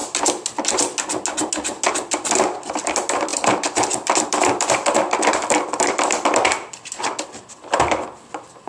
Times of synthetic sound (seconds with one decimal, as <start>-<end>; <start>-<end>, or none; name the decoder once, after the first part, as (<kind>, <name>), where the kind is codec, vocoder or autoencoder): 3.3-7.0 (vocoder, BigVGAN v2)